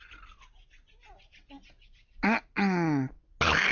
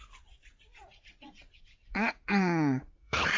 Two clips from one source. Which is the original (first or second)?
first